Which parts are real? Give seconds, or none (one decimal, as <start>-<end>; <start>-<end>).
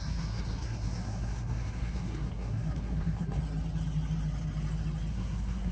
3.4-5.1